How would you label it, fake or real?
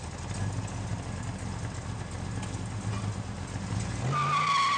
real